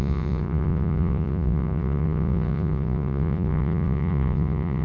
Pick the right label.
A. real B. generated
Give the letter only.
B